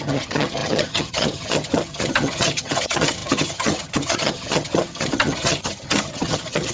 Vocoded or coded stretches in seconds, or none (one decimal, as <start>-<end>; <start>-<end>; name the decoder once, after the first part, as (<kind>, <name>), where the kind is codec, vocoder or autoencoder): 0.0-6.7 (vocoder, HiFi-GAN)

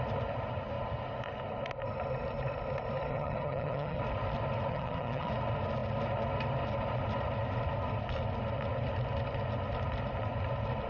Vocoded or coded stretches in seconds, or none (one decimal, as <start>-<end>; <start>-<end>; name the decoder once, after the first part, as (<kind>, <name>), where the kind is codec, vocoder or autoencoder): 3.1-4.0 (vocoder, HiFi-GAN); 4.7-5.3